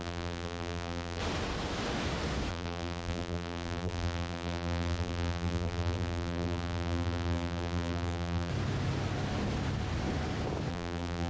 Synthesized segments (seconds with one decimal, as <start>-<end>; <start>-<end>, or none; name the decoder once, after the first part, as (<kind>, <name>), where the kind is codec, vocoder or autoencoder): 0.0-1.2 (vocoder, BigVGAN v2); 2.5-8.5; 10.7-11.3